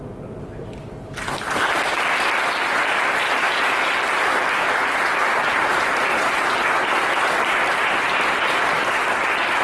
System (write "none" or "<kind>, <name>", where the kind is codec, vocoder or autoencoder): none